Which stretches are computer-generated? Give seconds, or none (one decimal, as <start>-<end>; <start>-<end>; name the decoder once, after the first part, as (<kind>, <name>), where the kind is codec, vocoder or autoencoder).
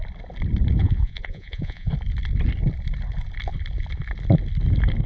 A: 0.8-1.9 (vocoder, Vocos)